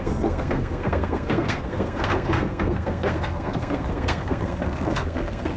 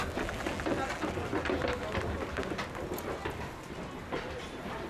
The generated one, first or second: first